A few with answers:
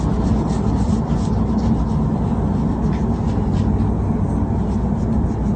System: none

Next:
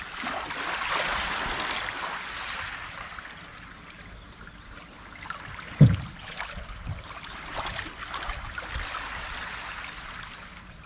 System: none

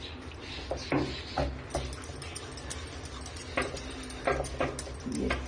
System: none